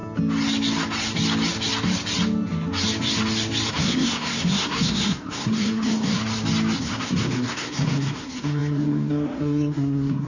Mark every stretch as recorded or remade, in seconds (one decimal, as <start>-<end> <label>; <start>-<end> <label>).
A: 0.0-3.7 recorded; 3.7-6.2 remade; 6.2-6.8 recorded; 6.8-10.3 remade